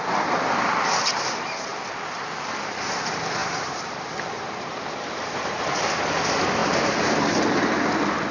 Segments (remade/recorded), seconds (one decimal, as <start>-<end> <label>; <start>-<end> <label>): 0.0-3.4 recorded; 3.4-5.6 remade; 5.6-8.3 recorded